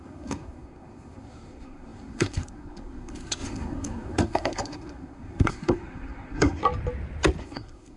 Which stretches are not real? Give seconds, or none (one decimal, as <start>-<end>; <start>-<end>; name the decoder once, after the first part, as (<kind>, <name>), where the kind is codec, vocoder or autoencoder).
0.0-6.6 (codec, SNAC); 7.4-8.0